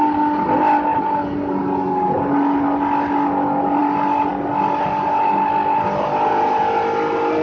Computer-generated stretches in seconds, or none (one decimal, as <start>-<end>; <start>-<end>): none